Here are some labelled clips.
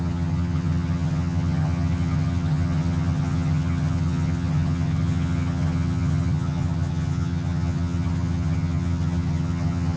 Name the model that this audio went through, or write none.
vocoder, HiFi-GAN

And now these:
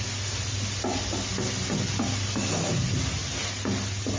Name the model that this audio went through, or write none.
none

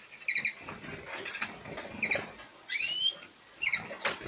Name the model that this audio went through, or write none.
none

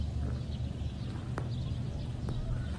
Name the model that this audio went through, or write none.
none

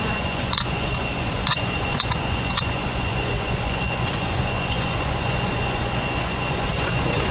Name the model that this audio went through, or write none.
vocoder, Vocos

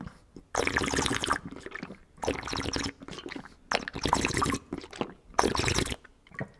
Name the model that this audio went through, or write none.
none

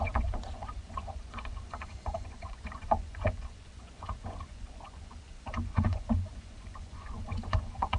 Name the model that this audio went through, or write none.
vocoder, Vocos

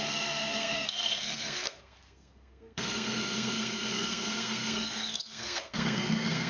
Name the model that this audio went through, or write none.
codec, SNAC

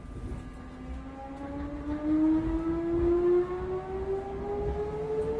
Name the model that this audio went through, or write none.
none